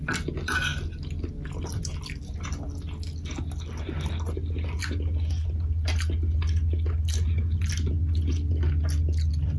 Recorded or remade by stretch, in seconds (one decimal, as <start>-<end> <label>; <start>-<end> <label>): 0.0-9.6 recorded